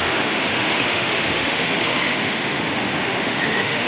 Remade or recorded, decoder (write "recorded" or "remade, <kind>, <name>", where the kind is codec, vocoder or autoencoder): remade, autoencoder, DAC-VAE